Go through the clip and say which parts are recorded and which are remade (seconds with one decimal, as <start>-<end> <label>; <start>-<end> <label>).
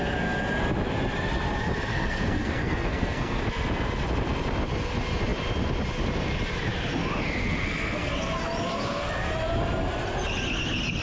0.0-1.9 recorded; 1.9-3.4 remade; 3.4-7.4 recorded; 7.4-8.1 remade; 8.1-11.0 recorded